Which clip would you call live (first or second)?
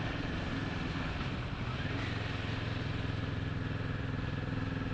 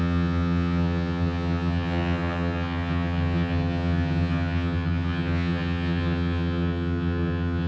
first